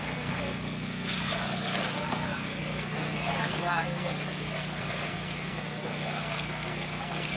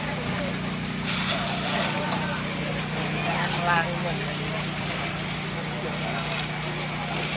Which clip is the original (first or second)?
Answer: second